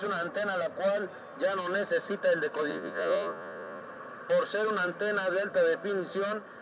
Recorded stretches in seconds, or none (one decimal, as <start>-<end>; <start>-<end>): 0.0-2.7; 3.8-6.6